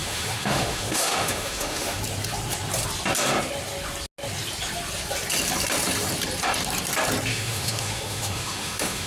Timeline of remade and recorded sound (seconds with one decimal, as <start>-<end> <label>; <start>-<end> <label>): 0.0-2.0 remade; 2.0-7.3 recorded; 7.3-9.1 remade